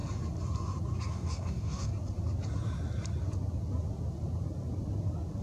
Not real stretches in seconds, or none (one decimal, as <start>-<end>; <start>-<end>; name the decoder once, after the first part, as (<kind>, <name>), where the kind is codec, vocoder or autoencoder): 1.1-1.9 (codec, DAC)